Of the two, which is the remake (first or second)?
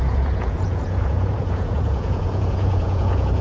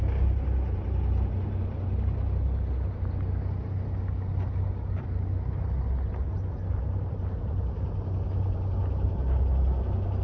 first